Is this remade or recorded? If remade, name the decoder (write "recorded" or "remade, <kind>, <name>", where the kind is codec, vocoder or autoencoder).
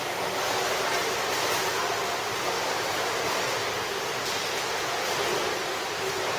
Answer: recorded